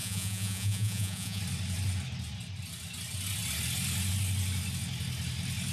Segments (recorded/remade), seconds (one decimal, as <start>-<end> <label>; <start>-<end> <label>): 0.0-1.4 remade; 1.4-5.7 recorded